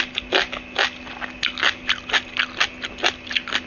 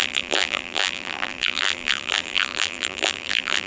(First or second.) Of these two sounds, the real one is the first